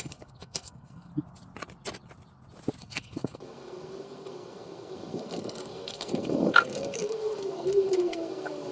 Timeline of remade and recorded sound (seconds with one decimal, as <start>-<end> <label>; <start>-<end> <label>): 0.0-1.1 remade; 1.1-2.8 recorded; 2.8-8.7 remade